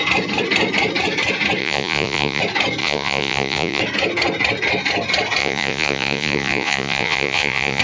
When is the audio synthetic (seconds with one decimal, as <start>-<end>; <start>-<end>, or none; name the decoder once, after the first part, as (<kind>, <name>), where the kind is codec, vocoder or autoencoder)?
1.6-2.4 (vocoder, Vocos); 2.8-3.8; 5.4-7.8